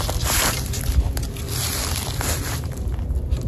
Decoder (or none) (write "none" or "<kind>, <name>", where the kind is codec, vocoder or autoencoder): none